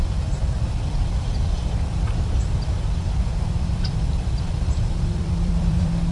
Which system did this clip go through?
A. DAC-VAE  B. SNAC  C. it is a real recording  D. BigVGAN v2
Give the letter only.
D